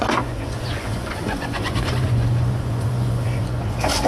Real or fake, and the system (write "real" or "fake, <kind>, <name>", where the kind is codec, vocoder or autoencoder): fake, vocoder, Vocos